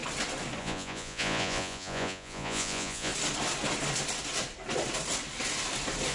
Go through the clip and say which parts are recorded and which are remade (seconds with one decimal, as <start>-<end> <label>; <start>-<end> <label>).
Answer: 0.0-0.6 recorded; 0.6-3.1 remade; 3.1-6.1 recorded